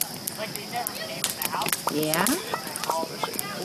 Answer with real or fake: real